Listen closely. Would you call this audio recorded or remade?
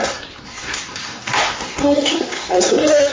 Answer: remade